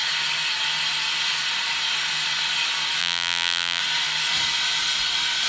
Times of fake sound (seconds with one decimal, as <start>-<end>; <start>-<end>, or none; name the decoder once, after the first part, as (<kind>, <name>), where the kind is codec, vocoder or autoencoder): 3.0-3.8 (vocoder, BigVGAN v2)